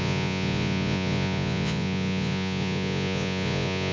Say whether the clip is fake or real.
fake